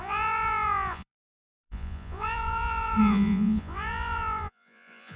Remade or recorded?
remade